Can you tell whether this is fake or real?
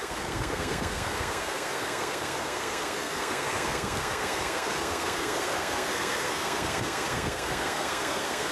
fake